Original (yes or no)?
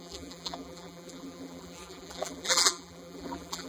no